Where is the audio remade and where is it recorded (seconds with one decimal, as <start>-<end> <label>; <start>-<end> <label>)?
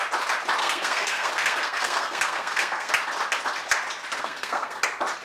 0.0-0.6 recorded; 0.6-2.9 remade; 2.9-4.2 recorded; 4.2-4.8 remade; 4.8-5.2 recorded